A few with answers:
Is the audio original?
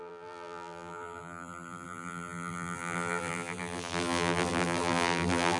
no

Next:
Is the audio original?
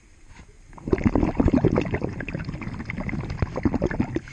yes